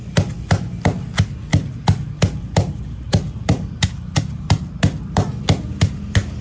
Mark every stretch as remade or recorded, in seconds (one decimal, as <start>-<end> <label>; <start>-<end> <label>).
0.0-1.5 recorded; 1.5-5.3 remade; 5.3-6.4 recorded